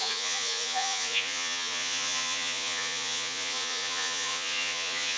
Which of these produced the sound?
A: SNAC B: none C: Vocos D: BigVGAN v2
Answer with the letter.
C